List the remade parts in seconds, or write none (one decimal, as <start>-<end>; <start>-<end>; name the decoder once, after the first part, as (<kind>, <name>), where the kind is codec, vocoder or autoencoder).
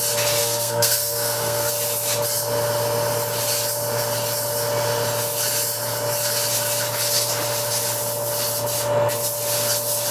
0.4-1.7 (codec, SNAC)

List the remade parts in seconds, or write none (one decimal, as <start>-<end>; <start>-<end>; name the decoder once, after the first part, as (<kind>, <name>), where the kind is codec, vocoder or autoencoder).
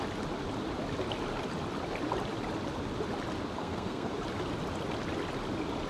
3.6-4.1 (codec, SNAC)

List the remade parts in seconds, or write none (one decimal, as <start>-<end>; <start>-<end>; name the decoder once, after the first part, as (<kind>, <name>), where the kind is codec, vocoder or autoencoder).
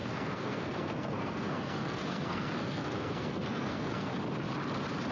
0.0-4.1 (codec, SNAC)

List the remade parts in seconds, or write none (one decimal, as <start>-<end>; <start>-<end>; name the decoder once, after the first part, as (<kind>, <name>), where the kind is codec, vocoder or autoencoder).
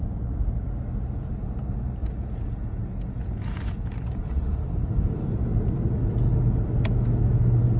2.0-4.6 (vocoder, Vocos)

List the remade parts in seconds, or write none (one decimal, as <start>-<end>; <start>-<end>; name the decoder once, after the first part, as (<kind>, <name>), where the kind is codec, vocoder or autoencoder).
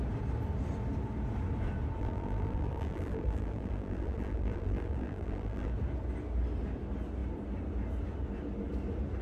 2.0-5.7 (vocoder, BigVGAN v2)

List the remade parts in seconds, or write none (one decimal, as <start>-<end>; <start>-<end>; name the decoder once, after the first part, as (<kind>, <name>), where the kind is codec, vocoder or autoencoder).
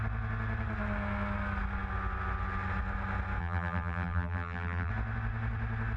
3.4-4.9 (vocoder, BigVGAN v2)